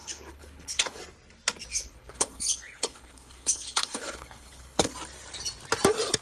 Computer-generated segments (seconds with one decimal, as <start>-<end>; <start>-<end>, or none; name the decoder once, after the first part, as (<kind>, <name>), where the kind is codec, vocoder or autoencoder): 0.0-1.0 (codec, HILCodec); 1.7-4.9